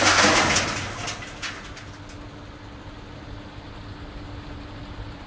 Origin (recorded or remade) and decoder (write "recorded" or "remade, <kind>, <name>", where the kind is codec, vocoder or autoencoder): recorded